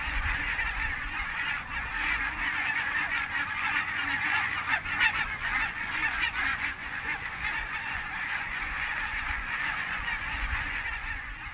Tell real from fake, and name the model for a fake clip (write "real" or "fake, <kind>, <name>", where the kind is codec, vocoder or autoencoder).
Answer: fake, vocoder, Vocos